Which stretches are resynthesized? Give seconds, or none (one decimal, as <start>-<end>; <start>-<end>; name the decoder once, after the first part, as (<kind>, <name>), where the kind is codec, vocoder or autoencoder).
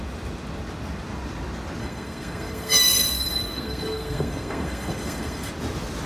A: 1.8-5.5 (codec, SNAC)